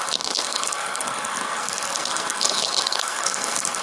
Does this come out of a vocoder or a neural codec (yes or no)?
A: yes